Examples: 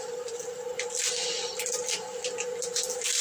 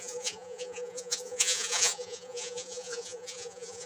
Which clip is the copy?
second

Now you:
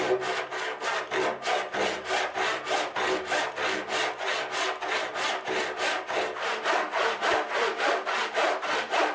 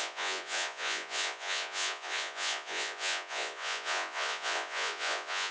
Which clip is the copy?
second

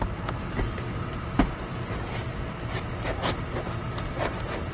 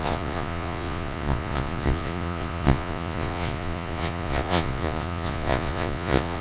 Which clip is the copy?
second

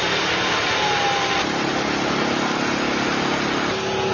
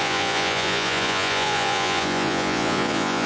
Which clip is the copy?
second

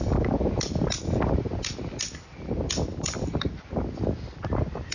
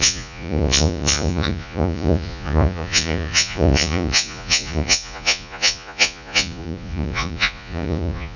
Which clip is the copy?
second